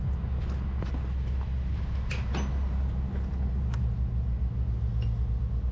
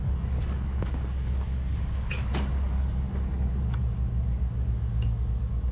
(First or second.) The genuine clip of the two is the first